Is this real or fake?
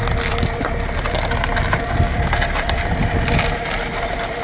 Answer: fake